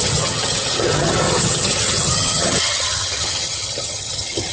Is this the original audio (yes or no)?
no